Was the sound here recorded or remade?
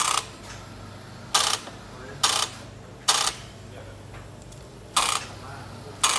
recorded